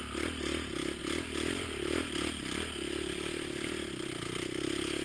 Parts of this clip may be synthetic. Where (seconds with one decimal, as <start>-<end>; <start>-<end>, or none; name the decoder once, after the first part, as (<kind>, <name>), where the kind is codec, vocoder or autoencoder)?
none